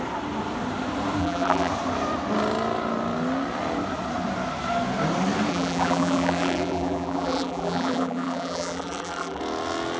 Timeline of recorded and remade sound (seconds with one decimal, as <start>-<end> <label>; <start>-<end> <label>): 0.0-1.2 recorded; 1.2-1.7 remade; 1.7-5.5 recorded; 5.5-9.4 remade; 9.4-10.0 recorded